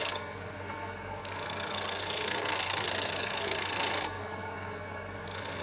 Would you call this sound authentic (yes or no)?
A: no